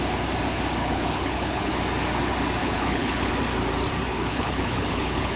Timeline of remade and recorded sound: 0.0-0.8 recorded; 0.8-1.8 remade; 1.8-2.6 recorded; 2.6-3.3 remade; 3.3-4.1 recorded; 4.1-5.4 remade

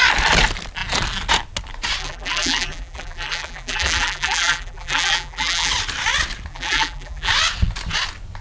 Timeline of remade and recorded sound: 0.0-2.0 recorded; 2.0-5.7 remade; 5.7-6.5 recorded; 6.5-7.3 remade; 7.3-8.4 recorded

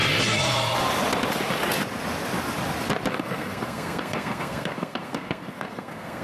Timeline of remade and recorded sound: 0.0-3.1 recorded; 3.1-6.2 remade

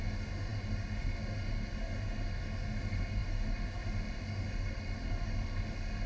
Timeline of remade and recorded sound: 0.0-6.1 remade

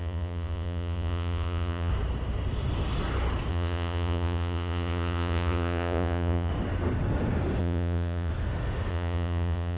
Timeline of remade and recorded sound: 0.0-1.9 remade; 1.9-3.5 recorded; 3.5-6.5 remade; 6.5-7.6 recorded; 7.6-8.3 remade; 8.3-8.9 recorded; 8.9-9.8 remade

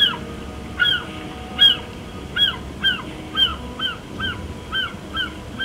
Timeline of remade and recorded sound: 0.0-0.9 recorded; 0.9-2.8 remade; 2.8-3.5 recorded; 3.5-4.1 remade; 4.1-5.6 recorded

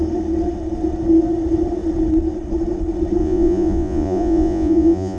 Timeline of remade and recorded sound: 0.0-3.2 recorded; 3.2-5.2 remade